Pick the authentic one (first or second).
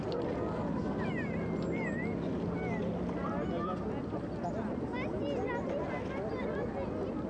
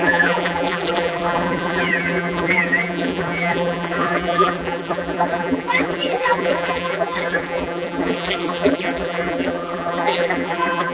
first